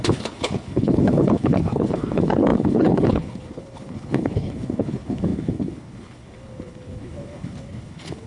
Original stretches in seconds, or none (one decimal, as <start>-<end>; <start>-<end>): none